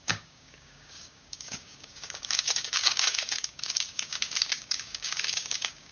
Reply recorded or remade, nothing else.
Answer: remade